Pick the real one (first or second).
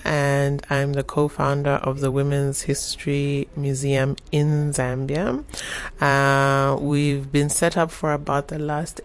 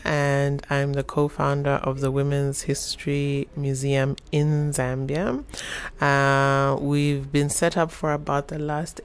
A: second